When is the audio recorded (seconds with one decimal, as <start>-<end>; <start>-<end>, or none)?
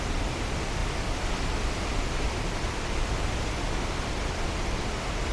0.8-3.4